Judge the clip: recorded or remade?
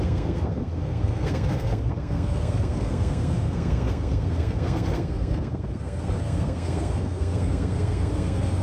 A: remade